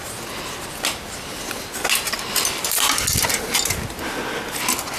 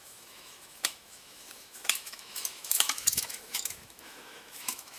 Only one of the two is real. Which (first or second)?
first